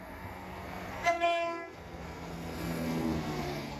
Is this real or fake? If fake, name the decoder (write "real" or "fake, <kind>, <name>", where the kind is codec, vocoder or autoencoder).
fake, codec, SNAC